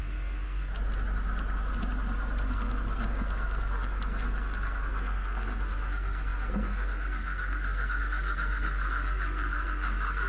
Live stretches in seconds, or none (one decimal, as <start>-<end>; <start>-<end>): 0.7-2.5